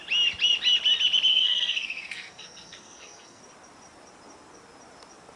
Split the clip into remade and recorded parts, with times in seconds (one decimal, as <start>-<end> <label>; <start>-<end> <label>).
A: 0.0-1.3 recorded; 1.3-3.4 remade; 3.4-5.4 recorded

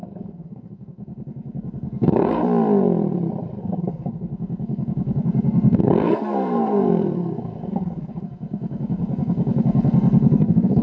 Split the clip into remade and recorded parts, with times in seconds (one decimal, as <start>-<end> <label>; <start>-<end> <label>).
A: 0.0-2.4 remade; 2.4-3.6 recorded; 3.6-10.8 remade

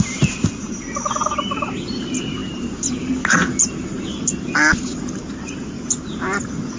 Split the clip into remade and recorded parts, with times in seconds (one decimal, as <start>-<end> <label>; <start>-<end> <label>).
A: 0.0-6.8 recorded

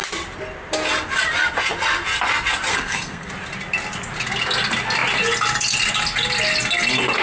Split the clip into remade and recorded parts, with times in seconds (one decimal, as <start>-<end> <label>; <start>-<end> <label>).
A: 0.0-2.7 recorded; 2.7-3.3 remade; 3.3-7.2 recorded

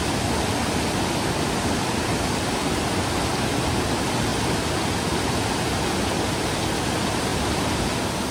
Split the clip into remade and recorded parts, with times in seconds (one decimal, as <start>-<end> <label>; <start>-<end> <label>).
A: 0.0-8.3 recorded

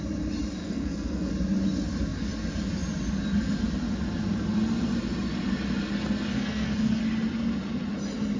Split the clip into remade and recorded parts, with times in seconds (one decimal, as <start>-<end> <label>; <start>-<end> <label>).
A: 0.0-0.6 recorded; 0.6-1.3 remade; 1.3-6.3 recorded; 6.3-7.0 remade; 7.0-8.4 recorded

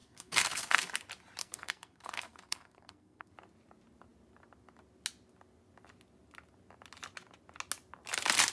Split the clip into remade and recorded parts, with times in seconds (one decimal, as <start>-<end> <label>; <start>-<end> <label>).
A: 0.0-0.9 remade; 0.9-1.4 recorded; 1.4-3.3 remade; 3.3-8.5 recorded

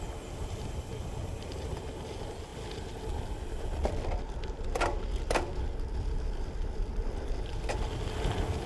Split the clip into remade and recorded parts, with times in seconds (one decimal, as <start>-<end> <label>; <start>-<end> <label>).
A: 0.0-8.7 recorded